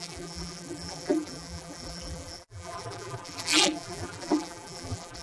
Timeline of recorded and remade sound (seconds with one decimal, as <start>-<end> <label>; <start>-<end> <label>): 0.0-5.2 remade

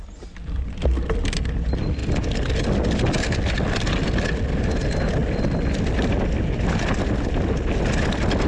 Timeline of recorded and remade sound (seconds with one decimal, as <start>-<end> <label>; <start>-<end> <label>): 0.0-2.0 recorded; 2.0-2.6 remade; 2.6-5.2 recorded; 5.2-6.1 remade; 6.1-8.5 recorded

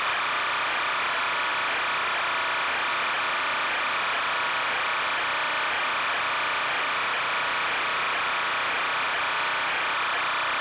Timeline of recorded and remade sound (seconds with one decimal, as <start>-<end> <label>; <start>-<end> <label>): 0.0-1.5 remade; 1.5-2.9 recorded; 2.9-5.1 remade; 5.1-5.7 recorded; 5.7-10.6 remade